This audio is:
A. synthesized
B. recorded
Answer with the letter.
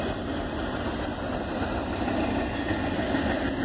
B